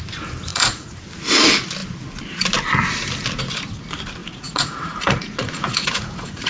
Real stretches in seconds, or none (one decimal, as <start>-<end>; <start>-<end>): 0.0-0.5; 1.0-4.2